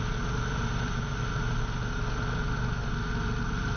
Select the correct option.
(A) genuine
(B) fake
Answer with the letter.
A